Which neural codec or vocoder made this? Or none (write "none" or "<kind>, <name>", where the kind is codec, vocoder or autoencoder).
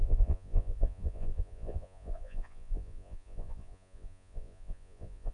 vocoder, Vocos